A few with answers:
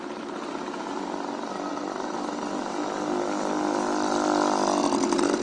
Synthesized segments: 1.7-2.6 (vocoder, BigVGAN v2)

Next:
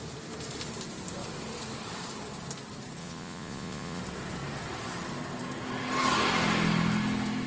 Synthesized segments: 3.0-4.0 (vocoder, Vocos)

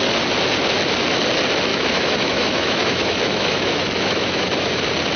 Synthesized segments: 1.7-4.8 (autoencoder, DAC-VAE)

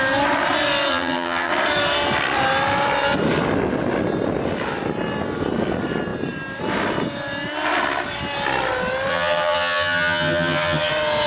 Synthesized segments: 0.9-1.5 (vocoder, HiFi-GAN); 9.1-10.9

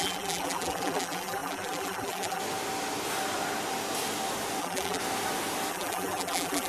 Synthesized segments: 0.0-2.4 (vocoder, BigVGAN v2); 4.6-5.0; 5.7-6.7

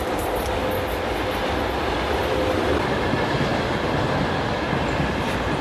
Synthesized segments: none

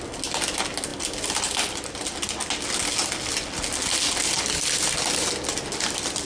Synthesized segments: none

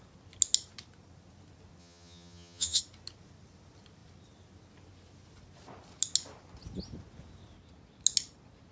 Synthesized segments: 1.8-2.8 (vocoder, HiFi-GAN)